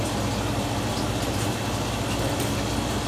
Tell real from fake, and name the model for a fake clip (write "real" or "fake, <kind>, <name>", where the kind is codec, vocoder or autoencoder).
real